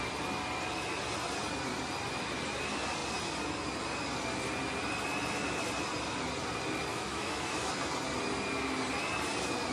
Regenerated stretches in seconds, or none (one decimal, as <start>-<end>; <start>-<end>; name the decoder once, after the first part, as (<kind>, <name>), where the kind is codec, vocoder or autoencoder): 6.9-7.7 (autoencoder, DAC-VAE)